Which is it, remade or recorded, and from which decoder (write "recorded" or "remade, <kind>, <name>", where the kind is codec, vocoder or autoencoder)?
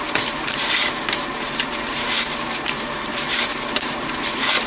remade, vocoder, BigVGAN v2